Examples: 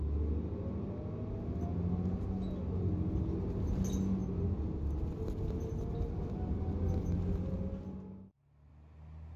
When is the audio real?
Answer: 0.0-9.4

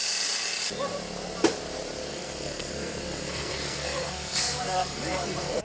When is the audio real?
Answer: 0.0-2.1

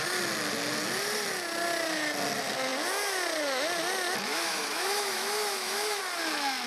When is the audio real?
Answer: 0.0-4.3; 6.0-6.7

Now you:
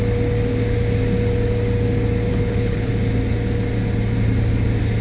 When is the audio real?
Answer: 0.0-2.3; 2.9-5.0

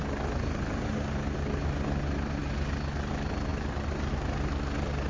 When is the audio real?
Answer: 0.0-5.1

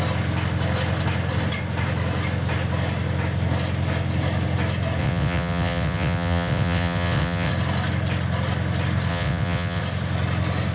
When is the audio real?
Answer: 0.0-5.0; 7.5-9.1; 9.8-10.7